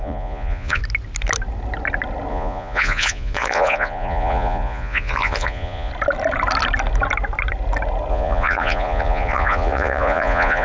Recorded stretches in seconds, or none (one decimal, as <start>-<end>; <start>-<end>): 0.8-2.3; 5.9-8.1